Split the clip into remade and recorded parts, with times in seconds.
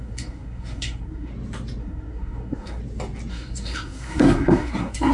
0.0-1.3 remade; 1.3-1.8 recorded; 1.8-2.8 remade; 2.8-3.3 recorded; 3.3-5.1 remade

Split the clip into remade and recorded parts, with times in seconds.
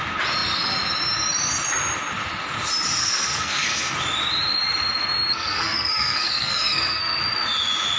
0.0-3.0 recorded; 3.0-3.9 remade; 3.9-5.3 recorded; 5.3-7.2 remade; 7.2-8.0 recorded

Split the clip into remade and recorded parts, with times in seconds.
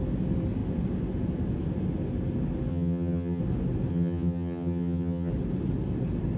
0.0-2.7 recorded; 2.7-3.4 remade; 3.4-3.9 recorded; 3.9-5.3 remade; 5.3-6.4 recorded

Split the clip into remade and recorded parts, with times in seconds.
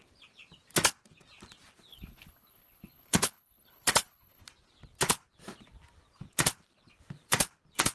0.0-1.9 recorded; 1.9-4.4 remade; 4.4-7.9 recorded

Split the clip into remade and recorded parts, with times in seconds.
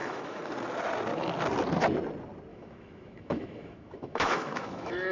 0.0-0.5 remade; 0.5-2.5 recorded; 2.5-5.1 remade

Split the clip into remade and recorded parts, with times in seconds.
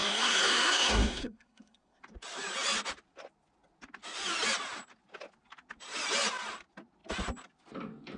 0.0-2.0 remade; 2.0-8.2 recorded